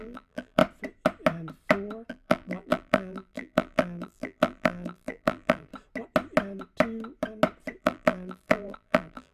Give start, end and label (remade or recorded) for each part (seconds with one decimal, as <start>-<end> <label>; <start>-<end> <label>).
0.0-0.6 remade; 0.6-2.1 recorded; 2.1-5.7 remade; 5.7-7.8 recorded; 7.8-9.3 remade